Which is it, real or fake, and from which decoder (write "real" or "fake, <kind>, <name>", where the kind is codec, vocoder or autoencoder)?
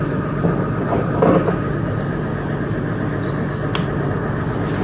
real